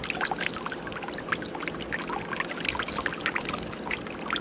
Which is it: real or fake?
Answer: real